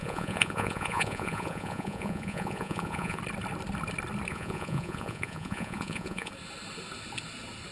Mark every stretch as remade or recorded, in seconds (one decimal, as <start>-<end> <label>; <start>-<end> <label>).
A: 0.0-3.2 remade; 3.2-4.3 recorded; 4.3-6.3 remade; 6.3-7.7 recorded